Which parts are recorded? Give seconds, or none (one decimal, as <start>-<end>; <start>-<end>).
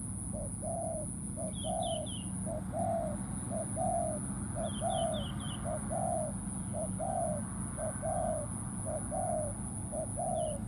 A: 0.0-10.7